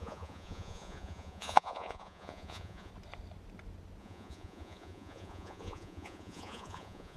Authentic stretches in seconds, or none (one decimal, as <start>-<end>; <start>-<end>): 2.9-4.0